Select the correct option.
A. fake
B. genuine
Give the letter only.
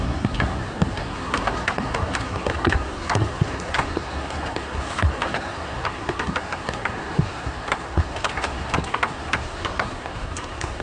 A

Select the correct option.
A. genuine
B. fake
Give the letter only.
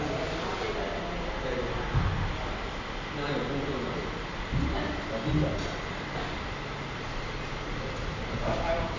A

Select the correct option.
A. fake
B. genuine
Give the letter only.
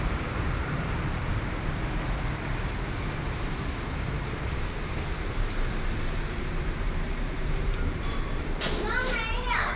A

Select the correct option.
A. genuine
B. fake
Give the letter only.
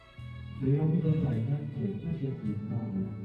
B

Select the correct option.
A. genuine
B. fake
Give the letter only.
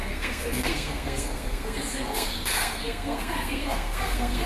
B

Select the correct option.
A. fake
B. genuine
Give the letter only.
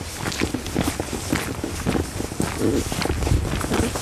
B